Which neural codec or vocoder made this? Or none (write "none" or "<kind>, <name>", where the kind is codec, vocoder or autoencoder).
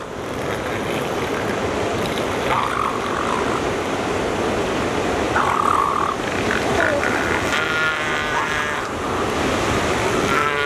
vocoder, BigVGAN v2